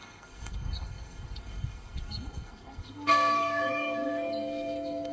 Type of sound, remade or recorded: remade